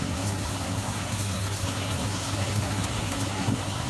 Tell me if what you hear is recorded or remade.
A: remade